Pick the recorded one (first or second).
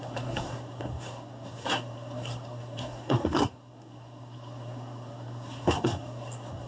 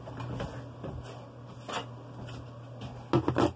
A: second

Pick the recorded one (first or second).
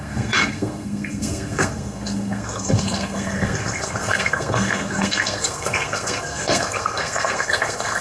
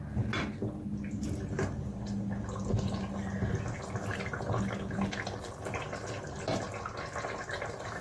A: second